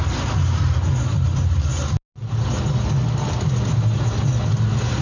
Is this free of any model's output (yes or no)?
yes